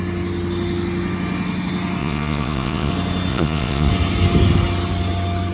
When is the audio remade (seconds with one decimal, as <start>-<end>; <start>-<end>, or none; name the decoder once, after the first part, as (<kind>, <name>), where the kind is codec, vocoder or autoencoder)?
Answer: 2.0-2.9 (vocoder, Vocos); 3.3-3.9